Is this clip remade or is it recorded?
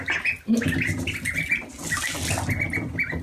recorded